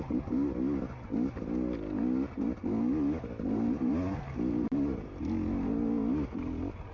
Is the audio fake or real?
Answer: real